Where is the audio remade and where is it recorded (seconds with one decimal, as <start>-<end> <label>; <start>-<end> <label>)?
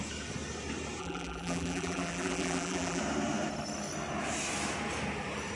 0.0-1.0 recorded; 1.0-3.0 remade; 3.0-5.6 recorded